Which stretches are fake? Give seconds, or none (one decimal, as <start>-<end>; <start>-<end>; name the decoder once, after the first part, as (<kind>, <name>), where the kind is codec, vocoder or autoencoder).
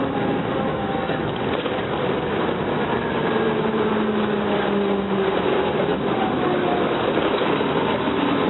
0.7-1.3 (codec, SNAC)